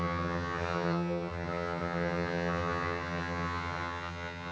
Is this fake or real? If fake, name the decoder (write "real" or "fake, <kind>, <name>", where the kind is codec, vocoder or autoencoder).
fake, vocoder, HiFi-GAN